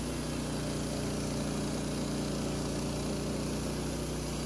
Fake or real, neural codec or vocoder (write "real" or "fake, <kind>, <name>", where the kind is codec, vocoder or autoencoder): real